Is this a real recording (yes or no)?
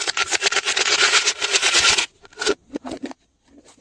no